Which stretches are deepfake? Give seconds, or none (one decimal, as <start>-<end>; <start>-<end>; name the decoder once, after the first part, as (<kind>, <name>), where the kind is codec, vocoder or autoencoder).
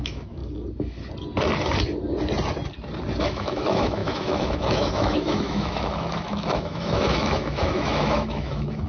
0.0-0.4 (autoencoder, DAC-VAE); 3.2-8.9